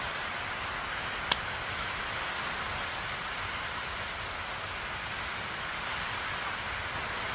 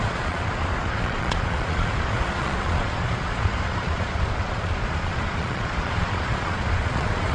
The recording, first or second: first